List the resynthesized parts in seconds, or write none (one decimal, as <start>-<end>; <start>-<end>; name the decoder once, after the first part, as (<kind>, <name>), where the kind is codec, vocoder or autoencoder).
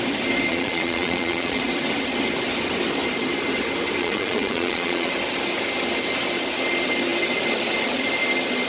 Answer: 0.5-1.6 (vocoder, Vocos); 4.0-5.1